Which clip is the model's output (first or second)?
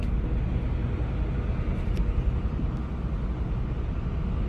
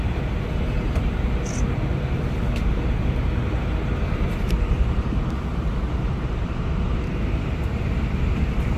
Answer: second